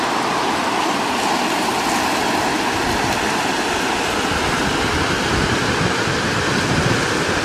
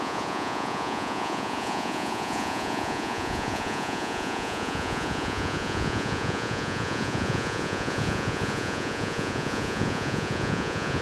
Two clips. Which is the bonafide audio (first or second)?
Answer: first